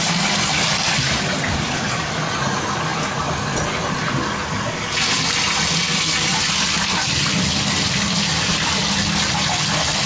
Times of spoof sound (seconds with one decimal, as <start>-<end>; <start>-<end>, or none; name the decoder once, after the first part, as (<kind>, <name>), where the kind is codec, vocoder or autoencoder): none